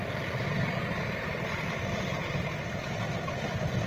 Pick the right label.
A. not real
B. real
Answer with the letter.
B